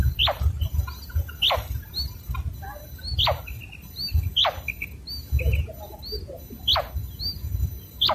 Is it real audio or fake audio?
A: real